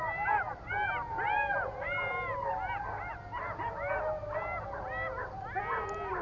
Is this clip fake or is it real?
real